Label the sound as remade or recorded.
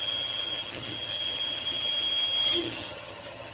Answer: remade